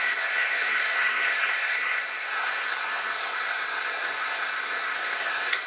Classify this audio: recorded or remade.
remade